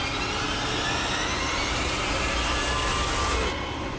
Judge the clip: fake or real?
real